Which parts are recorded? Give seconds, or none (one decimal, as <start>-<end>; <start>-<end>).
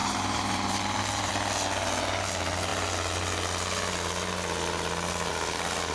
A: 1.3-5.9